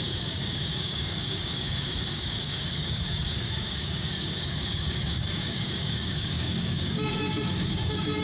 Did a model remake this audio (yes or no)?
yes